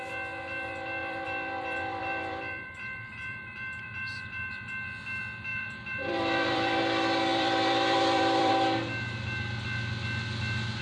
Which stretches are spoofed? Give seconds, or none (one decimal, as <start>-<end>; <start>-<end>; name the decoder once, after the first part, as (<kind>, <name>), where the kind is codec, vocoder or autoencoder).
1.0-4.5 (vocoder, BigVGAN v2); 5.5-6.8; 7.3-8.5